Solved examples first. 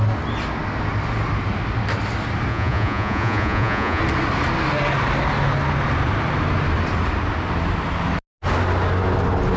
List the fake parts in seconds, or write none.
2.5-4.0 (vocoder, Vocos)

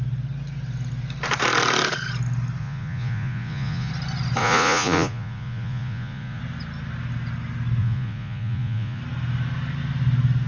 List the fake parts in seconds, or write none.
2.6-3.9 (vocoder, Vocos); 4.4-6.4; 7.8-9.0

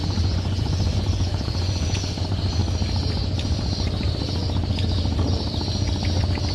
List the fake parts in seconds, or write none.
0.0-2.6 (vocoder, Vocos)